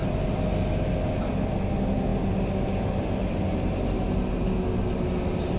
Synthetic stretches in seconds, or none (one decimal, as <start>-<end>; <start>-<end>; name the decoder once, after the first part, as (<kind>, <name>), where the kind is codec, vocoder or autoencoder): none